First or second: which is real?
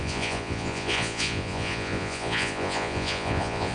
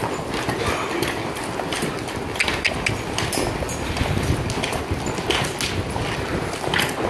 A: second